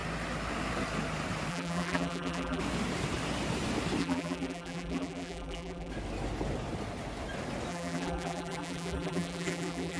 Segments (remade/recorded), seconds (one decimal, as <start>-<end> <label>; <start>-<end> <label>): 0.0-1.5 recorded; 1.5-2.6 remade; 2.6-4.0 recorded; 4.0-5.9 remade; 5.9-7.7 recorded; 7.7-10.0 remade